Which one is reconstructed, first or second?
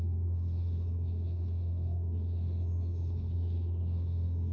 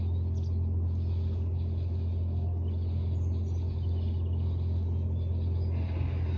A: first